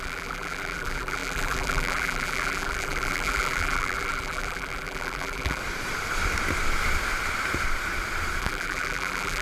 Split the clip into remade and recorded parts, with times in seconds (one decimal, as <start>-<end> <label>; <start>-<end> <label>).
0.0-5.6 remade; 5.6-8.4 recorded; 8.4-9.4 remade